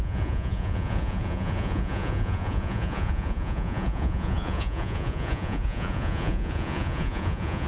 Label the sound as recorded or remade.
remade